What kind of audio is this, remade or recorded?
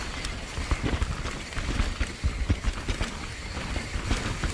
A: recorded